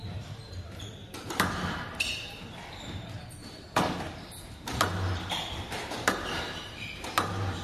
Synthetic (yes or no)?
yes